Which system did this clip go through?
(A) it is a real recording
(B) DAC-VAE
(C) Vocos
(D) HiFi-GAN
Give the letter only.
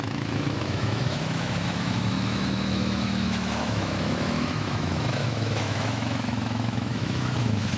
B